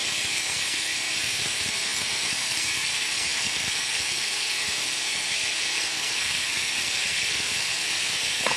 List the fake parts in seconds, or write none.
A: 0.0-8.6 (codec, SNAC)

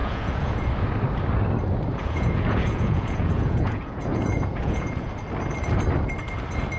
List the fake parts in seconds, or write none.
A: 0.0-0.7 (vocoder, Vocos); 1.9-5.1

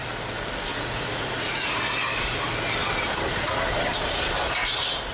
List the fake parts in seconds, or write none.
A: 0.7-1.7 (vocoder, Vocos)